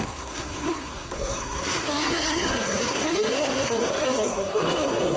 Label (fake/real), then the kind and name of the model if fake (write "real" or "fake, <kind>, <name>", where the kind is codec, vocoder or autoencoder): fake, codec, SNAC